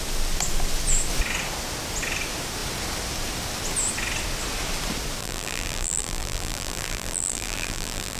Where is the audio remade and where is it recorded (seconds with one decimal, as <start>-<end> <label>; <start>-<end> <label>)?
0.0-5.2 recorded; 5.2-8.2 remade